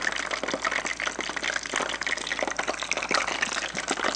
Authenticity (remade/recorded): recorded